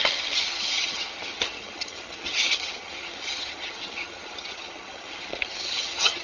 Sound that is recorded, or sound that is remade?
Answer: remade